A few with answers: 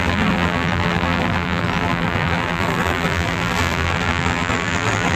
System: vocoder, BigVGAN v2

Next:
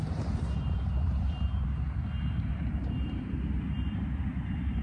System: vocoder, BigVGAN v2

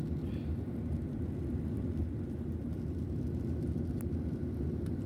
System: none